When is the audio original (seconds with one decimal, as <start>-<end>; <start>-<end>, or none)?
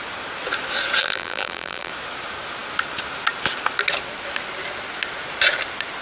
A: 0.0-1.0; 1.9-6.0